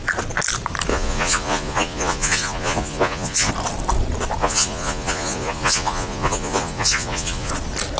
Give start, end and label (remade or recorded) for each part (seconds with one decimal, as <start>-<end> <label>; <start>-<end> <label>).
0.0-0.9 recorded; 0.9-3.5 remade; 3.5-4.4 recorded; 4.4-7.5 remade; 7.5-8.0 recorded